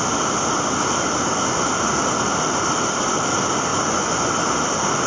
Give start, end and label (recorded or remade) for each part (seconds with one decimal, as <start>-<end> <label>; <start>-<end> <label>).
0.0-3.7 recorded; 3.7-4.3 remade; 4.3-5.1 recorded